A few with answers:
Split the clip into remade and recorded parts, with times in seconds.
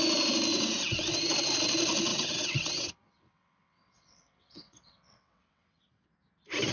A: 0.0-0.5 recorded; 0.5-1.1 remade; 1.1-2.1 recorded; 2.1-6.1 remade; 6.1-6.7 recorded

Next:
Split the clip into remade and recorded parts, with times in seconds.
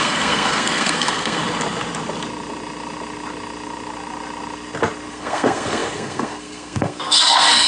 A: 0.0-1.4 remade; 1.4-5.1 recorded; 5.1-7.7 remade